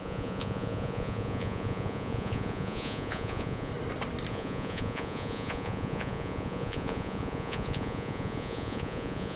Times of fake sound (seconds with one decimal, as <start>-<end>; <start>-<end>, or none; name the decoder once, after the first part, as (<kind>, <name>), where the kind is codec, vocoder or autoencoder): 0.0-3.7 (vocoder, Vocos); 4.3-9.4